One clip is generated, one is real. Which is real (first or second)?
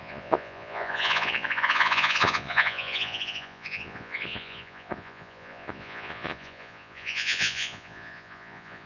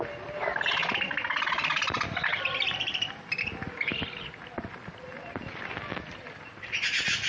second